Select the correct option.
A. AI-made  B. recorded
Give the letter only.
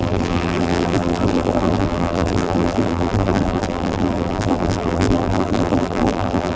A